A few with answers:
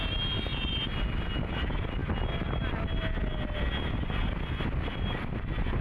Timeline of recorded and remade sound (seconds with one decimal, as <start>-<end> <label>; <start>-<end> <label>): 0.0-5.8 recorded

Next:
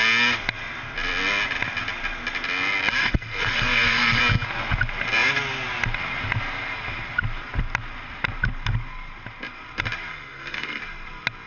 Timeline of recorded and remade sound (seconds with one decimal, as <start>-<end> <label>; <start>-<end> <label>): 0.0-3.0 recorded; 3.0-4.2 remade; 4.2-10.1 recorded; 10.1-10.8 remade; 10.8-11.5 recorded

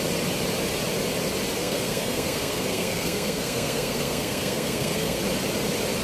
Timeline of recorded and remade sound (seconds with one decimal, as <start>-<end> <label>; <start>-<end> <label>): 0.0-1.6 recorded; 1.6-5.2 remade; 5.2-6.0 recorded

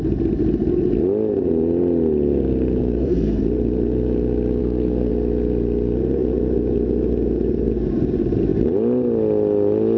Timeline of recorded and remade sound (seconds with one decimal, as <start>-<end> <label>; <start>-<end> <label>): 0.0-2.8 recorded; 2.8-3.4 remade; 3.4-4.6 recorded; 4.6-5.1 remade; 5.1-10.0 recorded